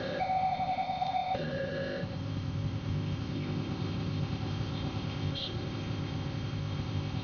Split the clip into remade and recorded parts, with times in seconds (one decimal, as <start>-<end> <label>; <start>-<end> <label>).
0.0-7.2 remade

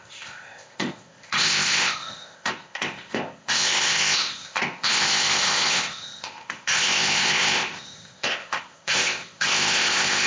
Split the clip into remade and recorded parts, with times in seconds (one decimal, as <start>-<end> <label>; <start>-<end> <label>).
0.0-10.3 remade

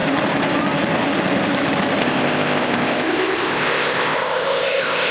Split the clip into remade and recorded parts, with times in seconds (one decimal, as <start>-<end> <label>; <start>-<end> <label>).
0.0-2.0 recorded; 2.0-5.1 remade

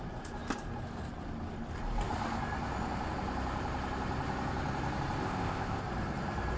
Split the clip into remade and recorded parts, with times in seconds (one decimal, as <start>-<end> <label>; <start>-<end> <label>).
0.0-5.2 recorded; 5.2-5.8 remade; 5.8-6.6 recorded

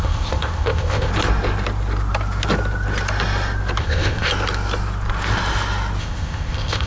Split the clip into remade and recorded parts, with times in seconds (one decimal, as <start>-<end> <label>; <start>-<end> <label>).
0.0-1.1 remade; 1.1-3.8 recorded; 3.8-4.3 remade; 4.3-6.0 recorded; 6.0-6.9 remade

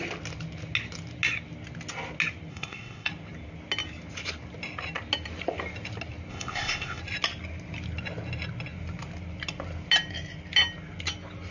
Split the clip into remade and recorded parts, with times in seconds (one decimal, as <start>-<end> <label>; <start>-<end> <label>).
0.0-2.5 recorded; 2.5-3.1 remade; 3.1-6.3 recorded; 6.3-7.0 remade; 7.0-11.5 recorded

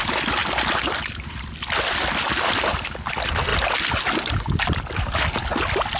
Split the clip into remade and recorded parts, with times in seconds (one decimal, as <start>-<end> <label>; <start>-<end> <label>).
0.0-6.0 recorded

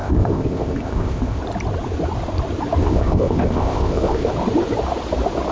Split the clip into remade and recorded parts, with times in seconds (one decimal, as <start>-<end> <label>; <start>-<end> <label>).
0.0-1.4 remade; 1.4-2.8 recorded; 2.8-4.3 remade; 4.3-5.5 recorded